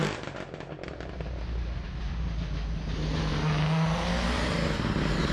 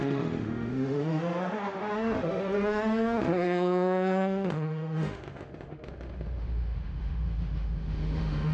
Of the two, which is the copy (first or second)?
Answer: second